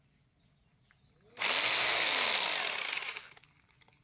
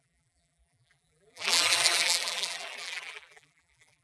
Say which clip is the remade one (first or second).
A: second